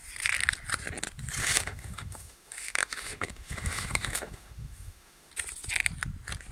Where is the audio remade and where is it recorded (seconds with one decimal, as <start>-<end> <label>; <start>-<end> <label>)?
0.0-1.4 recorded; 1.4-5.3 remade; 5.3-6.5 recorded